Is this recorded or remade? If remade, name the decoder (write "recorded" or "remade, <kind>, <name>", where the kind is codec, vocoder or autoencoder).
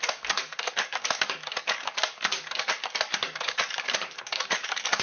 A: remade, codec, DAC